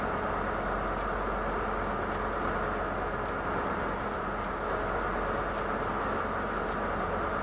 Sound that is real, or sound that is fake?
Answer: real